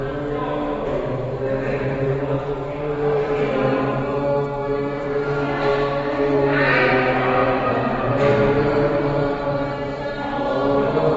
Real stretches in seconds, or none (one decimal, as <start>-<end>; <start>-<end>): 0.0-0.4; 3.4-7.4; 8.2-11.2